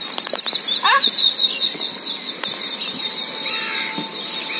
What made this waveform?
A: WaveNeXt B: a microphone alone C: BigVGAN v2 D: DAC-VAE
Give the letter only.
C